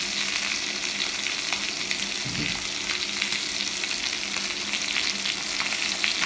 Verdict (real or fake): real